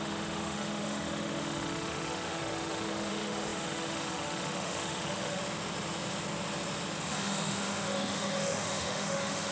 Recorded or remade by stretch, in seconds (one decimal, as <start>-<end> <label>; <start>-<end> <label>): 0.0-5.4 remade; 5.4-7.0 recorded; 7.0-9.5 remade